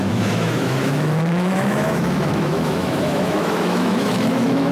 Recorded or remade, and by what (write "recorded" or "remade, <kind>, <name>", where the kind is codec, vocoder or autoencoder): remade, autoencoder, DAC-VAE